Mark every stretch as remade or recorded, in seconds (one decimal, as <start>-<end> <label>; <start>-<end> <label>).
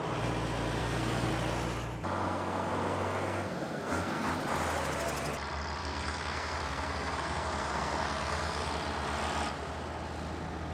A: 0.0-0.8 recorded; 0.8-1.3 remade; 1.3-2.2 recorded; 2.2-4.3 remade; 4.3-5.8 recorded; 5.8-8.7 remade; 8.7-10.7 recorded